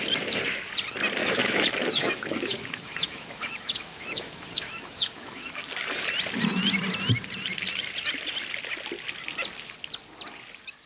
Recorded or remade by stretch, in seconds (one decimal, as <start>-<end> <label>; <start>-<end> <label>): 0.0-1.2 recorded; 1.2-5.6 remade; 5.6-10.9 recorded